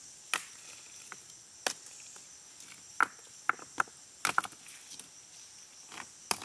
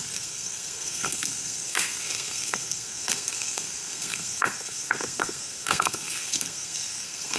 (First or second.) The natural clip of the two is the first